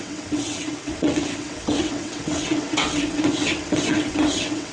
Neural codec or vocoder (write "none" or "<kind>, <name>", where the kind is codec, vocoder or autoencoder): vocoder, WaveNeXt